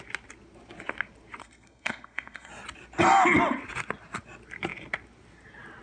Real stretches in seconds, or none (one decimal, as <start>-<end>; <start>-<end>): 0.0-1.4; 2.5-5.8